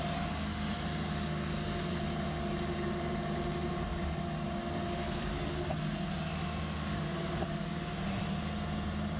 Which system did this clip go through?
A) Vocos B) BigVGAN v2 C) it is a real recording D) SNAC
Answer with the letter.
C